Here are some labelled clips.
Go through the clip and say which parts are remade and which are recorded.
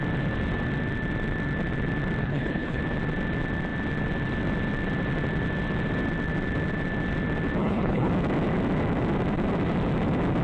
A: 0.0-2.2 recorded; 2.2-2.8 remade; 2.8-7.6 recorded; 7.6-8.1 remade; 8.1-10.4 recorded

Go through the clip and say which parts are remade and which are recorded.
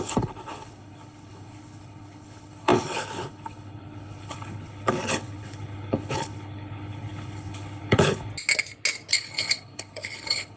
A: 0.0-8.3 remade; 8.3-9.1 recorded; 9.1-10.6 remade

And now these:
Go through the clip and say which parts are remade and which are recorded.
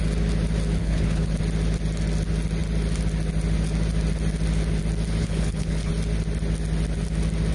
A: 0.0-0.8 recorded; 0.8-1.4 remade; 1.4-5.2 recorded; 5.2-5.9 remade; 5.9-7.5 recorded